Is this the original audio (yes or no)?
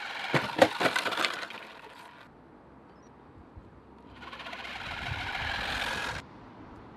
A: yes